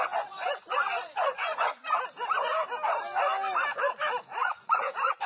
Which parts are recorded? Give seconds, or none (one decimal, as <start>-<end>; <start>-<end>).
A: 1.8-4.2